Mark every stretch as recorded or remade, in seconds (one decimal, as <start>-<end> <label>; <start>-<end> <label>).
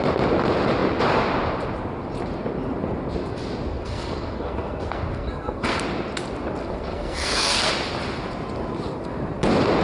0.0-3.7 recorded; 3.7-5.8 remade; 5.8-6.6 recorded; 6.6-7.7 remade; 7.7-9.8 recorded